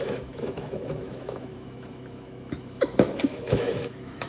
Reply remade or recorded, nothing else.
remade